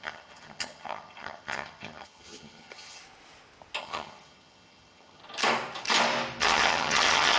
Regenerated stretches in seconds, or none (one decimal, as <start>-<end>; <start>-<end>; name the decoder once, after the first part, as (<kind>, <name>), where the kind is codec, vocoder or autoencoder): 0.0-3.0 (vocoder, HiFi-GAN); 3.8-5.2; 6.4-7.4